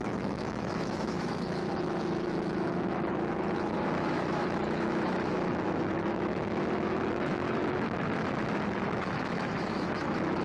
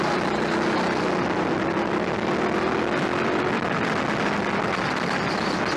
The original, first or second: second